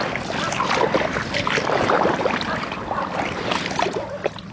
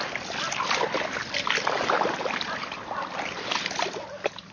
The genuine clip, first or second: second